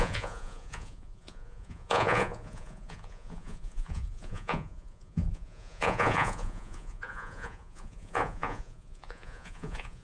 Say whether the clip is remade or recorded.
remade